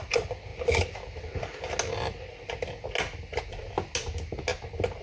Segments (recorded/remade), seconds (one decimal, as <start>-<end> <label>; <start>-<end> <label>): 0.0-5.0 recorded

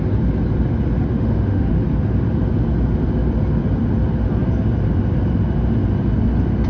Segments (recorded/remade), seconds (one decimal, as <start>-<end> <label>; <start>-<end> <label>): 0.0-1.1 recorded; 1.1-1.7 remade; 1.7-6.7 recorded

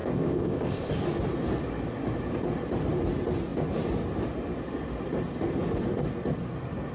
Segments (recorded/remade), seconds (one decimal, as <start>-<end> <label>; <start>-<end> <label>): 0.0-0.9 remade; 0.9-6.9 recorded

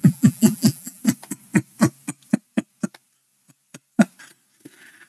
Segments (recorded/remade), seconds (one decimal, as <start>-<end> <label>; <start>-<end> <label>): 0.0-1.0 remade; 1.0-5.1 recorded

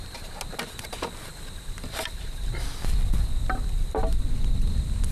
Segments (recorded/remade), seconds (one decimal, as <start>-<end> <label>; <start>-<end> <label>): 0.0-5.1 recorded

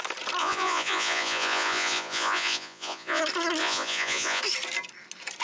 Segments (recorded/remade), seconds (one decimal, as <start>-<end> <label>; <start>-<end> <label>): 0.0-0.4 recorded; 0.4-3.2 remade; 3.2-3.6 recorded; 3.6-4.4 remade; 4.4-5.4 recorded

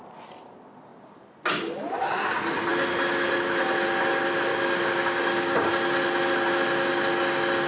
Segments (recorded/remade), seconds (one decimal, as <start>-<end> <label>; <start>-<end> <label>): 0.0-4.5 recorded; 4.5-5.7 remade; 5.7-7.7 recorded

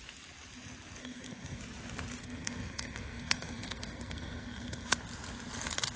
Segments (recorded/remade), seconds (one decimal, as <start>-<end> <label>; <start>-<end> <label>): 0.0-1.0 recorded; 1.0-1.6 remade; 1.6-2.2 recorded; 2.2-4.9 remade; 4.9-6.0 recorded